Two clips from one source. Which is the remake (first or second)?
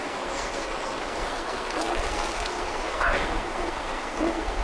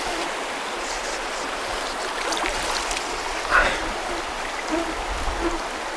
first